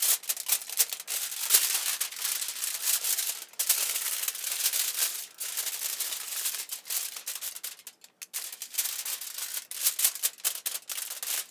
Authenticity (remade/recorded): recorded